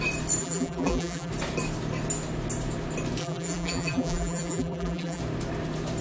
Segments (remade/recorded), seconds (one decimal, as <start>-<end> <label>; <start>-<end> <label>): 0.0-0.4 recorded; 0.4-1.3 remade; 1.3-3.2 recorded; 3.2-5.2 remade; 5.2-6.0 recorded